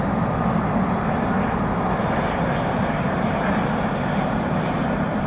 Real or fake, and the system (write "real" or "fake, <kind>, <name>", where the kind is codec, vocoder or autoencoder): real